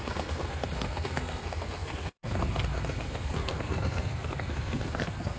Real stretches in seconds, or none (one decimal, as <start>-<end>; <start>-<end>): none